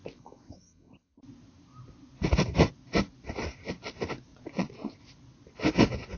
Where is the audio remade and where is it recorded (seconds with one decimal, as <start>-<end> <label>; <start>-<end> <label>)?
0.0-4.3 recorded; 4.3-5.0 remade; 5.0-6.2 recorded